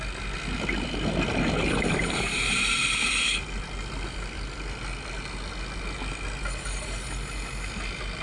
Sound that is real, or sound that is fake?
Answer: real